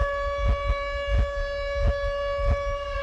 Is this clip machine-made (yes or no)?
no